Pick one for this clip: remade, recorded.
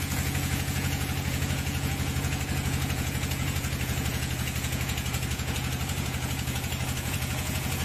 remade